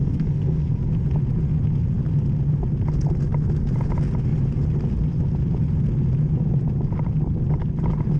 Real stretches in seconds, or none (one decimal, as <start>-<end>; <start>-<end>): 0.9-8.2